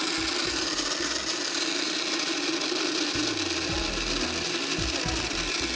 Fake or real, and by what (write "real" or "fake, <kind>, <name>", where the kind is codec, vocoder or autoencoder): real